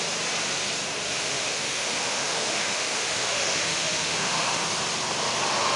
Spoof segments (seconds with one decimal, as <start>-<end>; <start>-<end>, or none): 1.2-4.7